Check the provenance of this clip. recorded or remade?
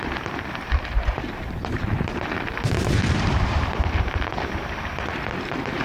remade